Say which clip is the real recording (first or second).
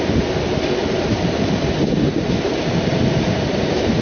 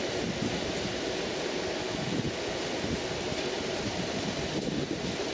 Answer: first